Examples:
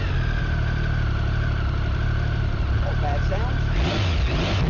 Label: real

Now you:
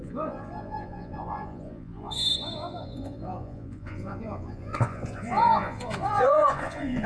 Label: fake